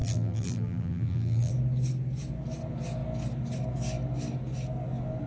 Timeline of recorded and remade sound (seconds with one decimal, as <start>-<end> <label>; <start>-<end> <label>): 0.0-1.5 remade; 1.5-5.3 recorded